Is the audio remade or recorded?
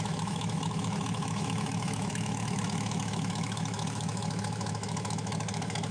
remade